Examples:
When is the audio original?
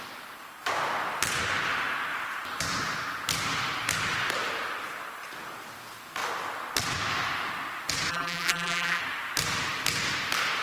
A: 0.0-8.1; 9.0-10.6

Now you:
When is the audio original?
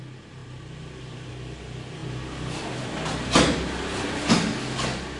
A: 0.0-0.4; 1.3-5.2